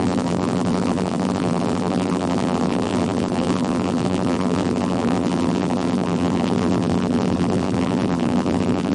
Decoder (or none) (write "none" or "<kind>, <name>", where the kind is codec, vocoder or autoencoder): vocoder, BigVGAN v2